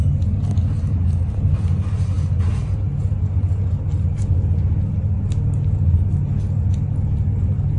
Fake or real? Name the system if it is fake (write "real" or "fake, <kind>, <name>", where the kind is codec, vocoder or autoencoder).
real